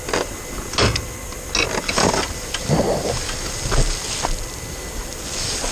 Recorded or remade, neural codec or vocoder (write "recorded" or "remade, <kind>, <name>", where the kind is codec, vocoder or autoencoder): recorded